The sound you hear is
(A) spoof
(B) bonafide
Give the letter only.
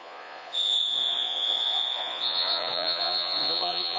A